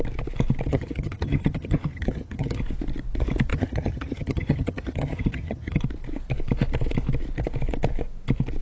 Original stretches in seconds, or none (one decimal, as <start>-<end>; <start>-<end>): 0.0-0.7; 2.6-3.5; 5.8-8.6